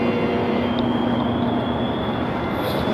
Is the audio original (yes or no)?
yes